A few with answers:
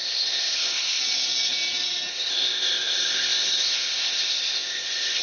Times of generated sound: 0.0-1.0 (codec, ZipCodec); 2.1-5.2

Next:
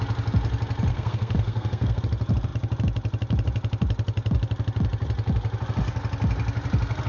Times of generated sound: 0.9-2.0 (codec, SNAC)